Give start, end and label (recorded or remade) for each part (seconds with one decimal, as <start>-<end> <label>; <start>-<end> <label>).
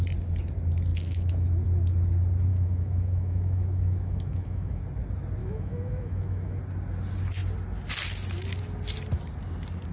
0.0-0.9 recorded; 0.9-1.5 remade; 1.5-2.5 recorded; 2.5-4.8 remade; 4.8-5.4 recorded; 5.4-6.6 remade; 6.6-9.9 recorded